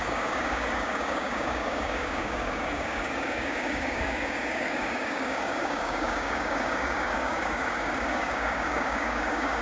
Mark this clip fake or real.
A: fake